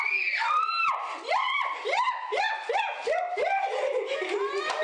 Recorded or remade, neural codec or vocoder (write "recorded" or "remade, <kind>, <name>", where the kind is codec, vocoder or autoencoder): recorded